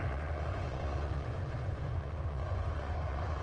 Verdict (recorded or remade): remade